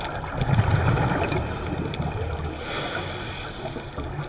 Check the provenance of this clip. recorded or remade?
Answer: recorded